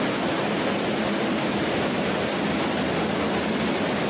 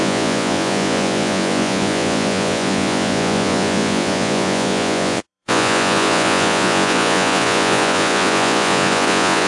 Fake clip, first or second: second